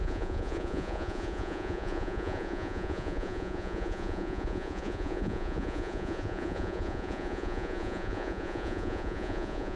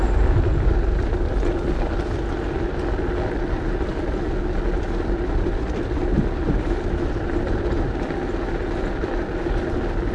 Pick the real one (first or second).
second